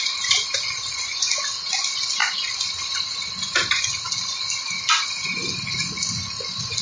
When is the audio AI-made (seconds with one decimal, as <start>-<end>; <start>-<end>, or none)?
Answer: none